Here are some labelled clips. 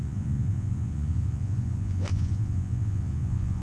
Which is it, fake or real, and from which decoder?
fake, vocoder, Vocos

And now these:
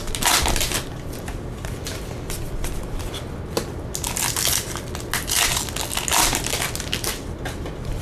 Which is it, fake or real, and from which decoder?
real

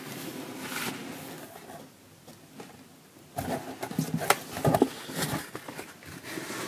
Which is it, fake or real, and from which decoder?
real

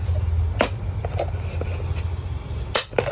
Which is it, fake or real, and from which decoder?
real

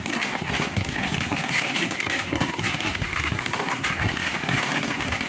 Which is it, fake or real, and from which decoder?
fake, codec, SNAC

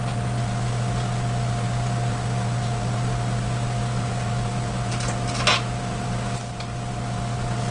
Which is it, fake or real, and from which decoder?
real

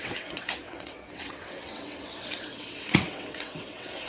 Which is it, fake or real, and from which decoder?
fake, vocoder, WaveNeXt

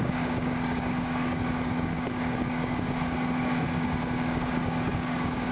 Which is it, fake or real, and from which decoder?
fake, codec, DAC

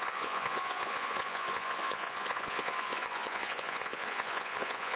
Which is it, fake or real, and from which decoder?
fake, vocoder, Vocos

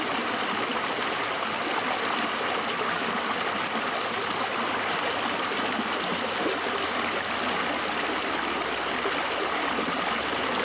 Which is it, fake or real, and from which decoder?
real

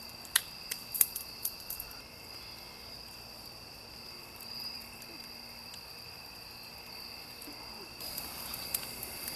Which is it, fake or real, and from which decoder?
fake, vocoder, BigVGAN v2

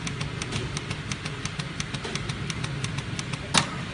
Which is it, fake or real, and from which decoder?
real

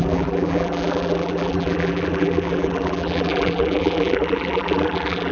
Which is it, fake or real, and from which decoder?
fake, vocoder, BigVGAN v2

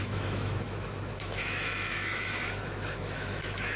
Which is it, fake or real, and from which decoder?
fake, autoencoder, DAC-VAE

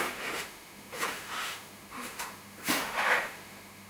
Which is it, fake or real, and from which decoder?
fake, autoencoder, DAC-VAE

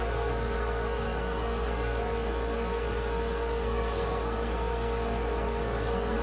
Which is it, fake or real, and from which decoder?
fake, codec, SNAC